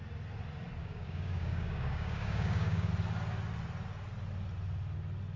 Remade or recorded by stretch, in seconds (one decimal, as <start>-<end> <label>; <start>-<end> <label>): 0.0-0.8 recorded; 0.8-2.9 remade; 2.9-5.4 recorded